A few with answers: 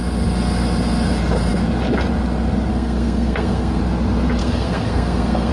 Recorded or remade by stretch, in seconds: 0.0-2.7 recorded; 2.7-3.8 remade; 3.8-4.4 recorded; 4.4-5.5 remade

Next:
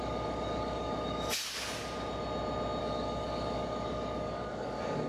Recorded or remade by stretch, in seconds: 0.0-1.8 remade; 1.8-2.8 recorded; 2.8-5.1 remade

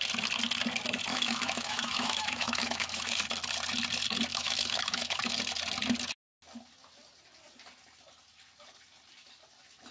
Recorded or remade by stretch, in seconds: 0.0-1.1 recorded; 1.1-3.2 remade; 3.2-4.3 recorded; 4.3-5.3 remade; 5.3-9.9 recorded